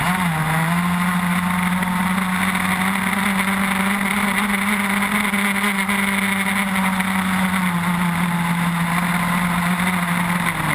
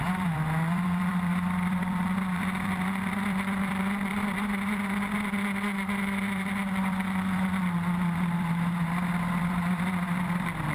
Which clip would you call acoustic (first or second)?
first